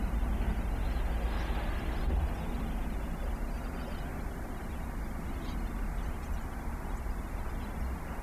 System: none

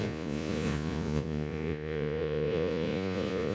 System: vocoder, Vocos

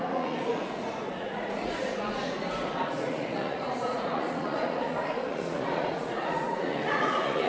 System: vocoder, Vocos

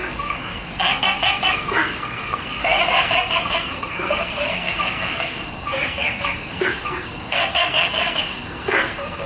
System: codec, SNAC